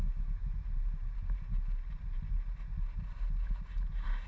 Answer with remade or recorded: recorded